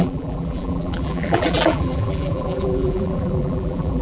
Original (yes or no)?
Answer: no